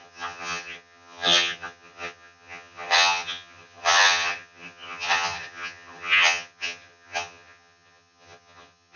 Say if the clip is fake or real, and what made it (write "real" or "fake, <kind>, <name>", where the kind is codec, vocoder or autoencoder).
fake, vocoder, HiFi-GAN